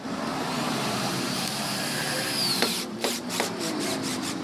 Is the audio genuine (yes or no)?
no